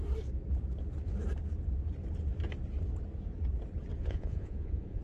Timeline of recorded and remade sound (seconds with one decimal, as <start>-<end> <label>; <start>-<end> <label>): 0.0-4.0 recorded; 4.0-5.0 remade